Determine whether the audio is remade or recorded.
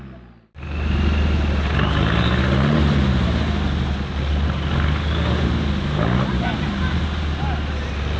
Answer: recorded